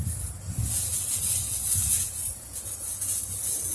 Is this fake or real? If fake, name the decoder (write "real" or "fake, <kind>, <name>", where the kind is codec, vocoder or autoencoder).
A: fake, vocoder, Vocos